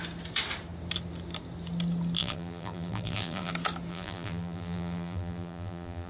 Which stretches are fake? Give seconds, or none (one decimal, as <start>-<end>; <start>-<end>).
2.2-3.5; 3.9-6.1

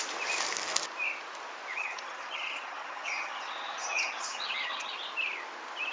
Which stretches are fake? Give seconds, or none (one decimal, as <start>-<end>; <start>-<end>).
1.7-4.9

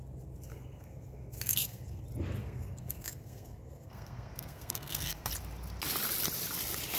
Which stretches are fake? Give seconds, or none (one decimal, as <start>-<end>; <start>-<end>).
0.5-2.0; 2.4-5.3

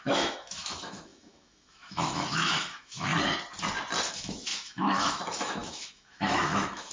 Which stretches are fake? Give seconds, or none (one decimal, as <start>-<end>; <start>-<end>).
0.0-3.1; 4.1-6.9

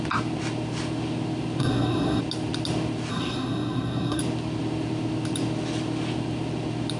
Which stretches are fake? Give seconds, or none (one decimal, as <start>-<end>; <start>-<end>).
1.6-2.2; 3.1-4.2

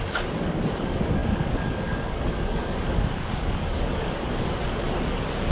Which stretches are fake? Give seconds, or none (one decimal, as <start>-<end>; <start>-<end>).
0.0-5.5

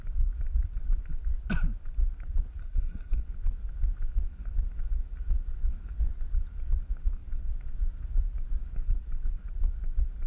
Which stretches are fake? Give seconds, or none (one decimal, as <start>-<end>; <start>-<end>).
2.6-3.2